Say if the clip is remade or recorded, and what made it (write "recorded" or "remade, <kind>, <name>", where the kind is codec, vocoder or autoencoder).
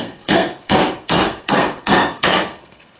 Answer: remade, codec, SNAC